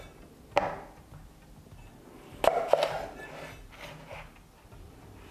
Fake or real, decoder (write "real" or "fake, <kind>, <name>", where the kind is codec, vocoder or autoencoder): real